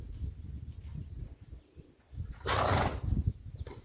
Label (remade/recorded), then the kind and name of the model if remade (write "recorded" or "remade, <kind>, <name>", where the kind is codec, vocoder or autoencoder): recorded